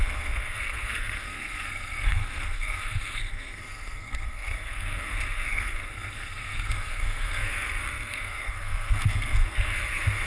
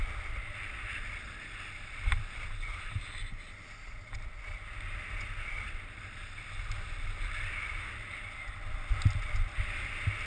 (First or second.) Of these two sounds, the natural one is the second